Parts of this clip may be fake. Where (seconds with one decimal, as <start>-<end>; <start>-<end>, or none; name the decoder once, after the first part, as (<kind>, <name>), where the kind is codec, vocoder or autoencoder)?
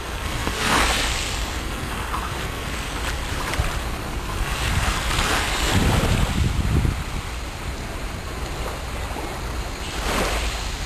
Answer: 0.0-3.0 (codec, SNAC); 3.8-5.7